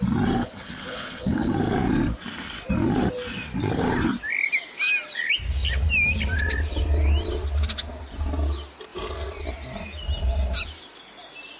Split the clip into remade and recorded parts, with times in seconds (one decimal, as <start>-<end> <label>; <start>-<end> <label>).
0.0-0.4 recorded; 0.4-1.5 remade; 1.5-11.6 recorded